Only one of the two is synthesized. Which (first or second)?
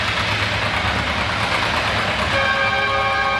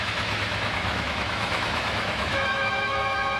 second